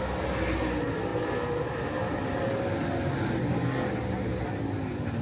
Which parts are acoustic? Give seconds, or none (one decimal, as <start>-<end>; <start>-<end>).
0.0-5.2